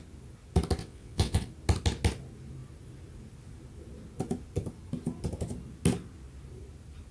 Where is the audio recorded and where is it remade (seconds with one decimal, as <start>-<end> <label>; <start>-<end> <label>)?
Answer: 0.0-0.8 recorded; 0.8-1.5 remade; 1.5-7.1 recorded